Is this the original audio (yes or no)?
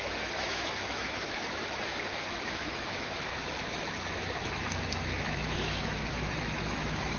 no